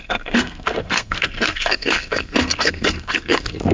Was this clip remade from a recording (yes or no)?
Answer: yes